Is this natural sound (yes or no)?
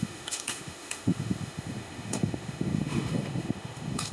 no